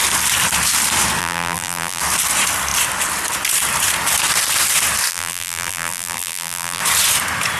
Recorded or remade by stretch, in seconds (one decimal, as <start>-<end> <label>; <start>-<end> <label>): 0.0-1.2 recorded; 1.2-2.0 remade; 2.0-5.1 recorded; 5.1-6.8 remade; 6.8-7.6 recorded